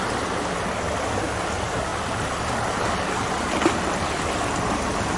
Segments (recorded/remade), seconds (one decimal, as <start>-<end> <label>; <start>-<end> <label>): 0.0-5.2 recorded